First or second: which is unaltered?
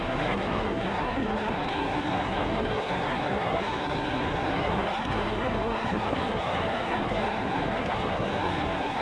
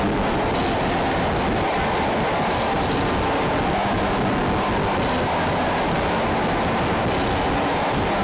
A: second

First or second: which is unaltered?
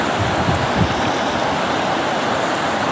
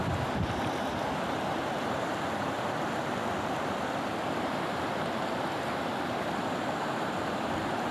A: first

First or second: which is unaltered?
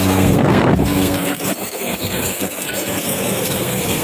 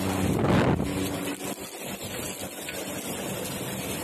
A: second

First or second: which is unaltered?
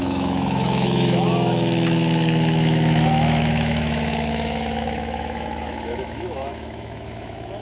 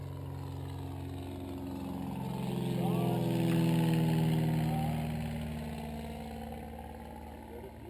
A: second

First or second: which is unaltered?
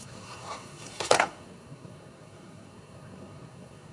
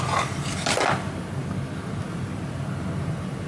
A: second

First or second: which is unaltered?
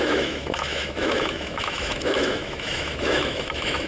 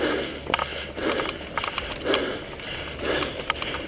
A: second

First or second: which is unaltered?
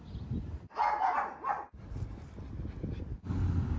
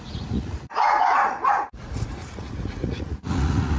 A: first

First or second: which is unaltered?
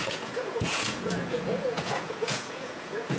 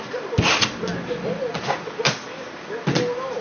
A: second